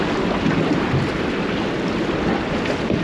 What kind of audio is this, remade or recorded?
recorded